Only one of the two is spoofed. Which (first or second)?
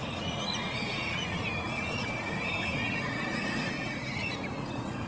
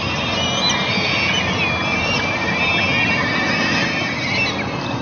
first